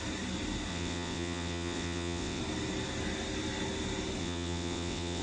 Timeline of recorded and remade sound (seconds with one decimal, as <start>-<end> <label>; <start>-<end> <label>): 0.0-0.7 recorded; 0.7-2.4 remade; 2.4-4.2 recorded; 4.2-5.2 remade